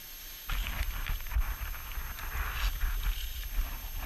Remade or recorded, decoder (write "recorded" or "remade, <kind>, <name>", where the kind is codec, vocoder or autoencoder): recorded